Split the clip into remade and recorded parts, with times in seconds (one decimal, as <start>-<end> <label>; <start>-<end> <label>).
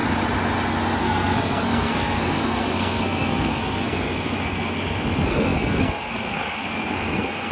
0.0-1.0 recorded; 1.0-7.5 remade